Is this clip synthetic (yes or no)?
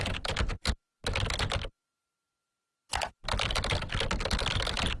no